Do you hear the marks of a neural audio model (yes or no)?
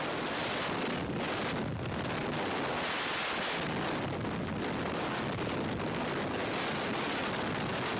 no